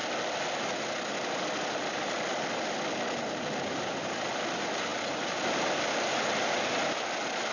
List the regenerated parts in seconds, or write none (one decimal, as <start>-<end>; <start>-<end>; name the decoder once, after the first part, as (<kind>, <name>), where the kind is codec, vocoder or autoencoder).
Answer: none